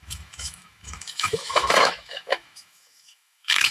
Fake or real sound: fake